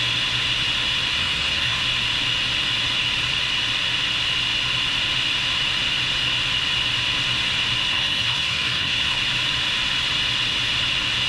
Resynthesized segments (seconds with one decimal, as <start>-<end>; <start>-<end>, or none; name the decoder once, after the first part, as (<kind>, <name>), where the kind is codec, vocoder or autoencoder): 1.2-1.8 (codec, SNAC); 7.9-9.2